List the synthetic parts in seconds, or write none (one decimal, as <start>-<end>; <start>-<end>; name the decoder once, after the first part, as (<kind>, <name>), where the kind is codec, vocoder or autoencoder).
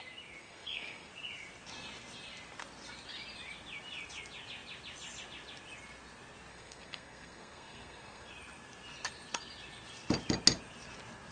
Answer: 0.4-1.1 (codec, SNAC); 6.5-8.3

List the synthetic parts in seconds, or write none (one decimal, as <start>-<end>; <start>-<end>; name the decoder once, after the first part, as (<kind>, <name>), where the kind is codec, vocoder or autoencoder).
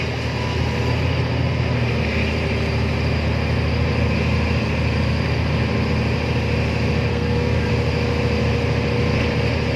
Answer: 7.1-7.7 (codec, SNAC)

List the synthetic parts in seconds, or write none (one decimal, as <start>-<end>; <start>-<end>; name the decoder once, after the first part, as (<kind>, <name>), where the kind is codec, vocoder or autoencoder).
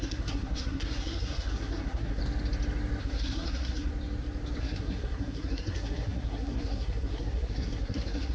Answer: 0.0-2.2 (codec, SNAC); 3.0-3.9; 4.6-8.3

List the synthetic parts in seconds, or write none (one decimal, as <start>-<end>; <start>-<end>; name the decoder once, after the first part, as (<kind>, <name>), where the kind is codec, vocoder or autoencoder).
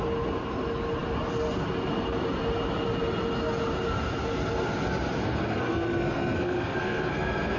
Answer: 5.2-7.6 (codec, SNAC)